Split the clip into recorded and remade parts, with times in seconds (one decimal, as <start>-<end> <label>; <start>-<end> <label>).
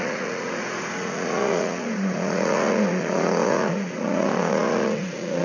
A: 0.0-5.4 remade